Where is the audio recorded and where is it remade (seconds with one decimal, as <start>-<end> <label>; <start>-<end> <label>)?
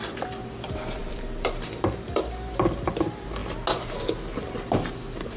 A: 0.0-3.4 remade; 3.4-4.5 recorded; 4.5-5.4 remade